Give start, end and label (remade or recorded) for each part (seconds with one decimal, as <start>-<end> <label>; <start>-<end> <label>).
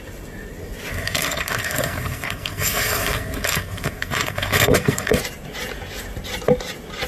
0.0-0.9 recorded; 0.9-5.2 remade; 5.2-7.1 recorded